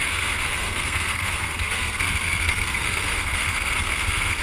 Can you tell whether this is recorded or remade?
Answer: remade